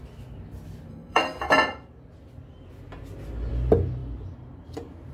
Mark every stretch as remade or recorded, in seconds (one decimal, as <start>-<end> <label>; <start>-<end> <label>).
0.0-0.9 recorded; 0.9-1.4 remade; 1.4-5.1 recorded